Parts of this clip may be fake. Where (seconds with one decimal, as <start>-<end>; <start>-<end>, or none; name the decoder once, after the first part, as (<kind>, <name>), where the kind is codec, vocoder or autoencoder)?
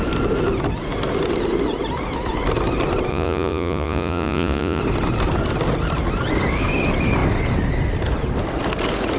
3.1-4.8 (vocoder, Vocos)